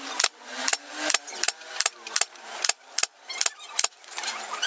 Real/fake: real